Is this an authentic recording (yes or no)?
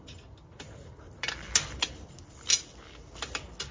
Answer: yes